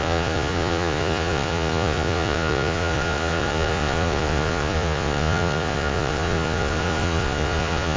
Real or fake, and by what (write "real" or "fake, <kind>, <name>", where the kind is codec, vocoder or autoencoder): fake, vocoder, Vocos